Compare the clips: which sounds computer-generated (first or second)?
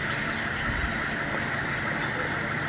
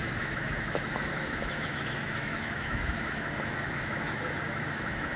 second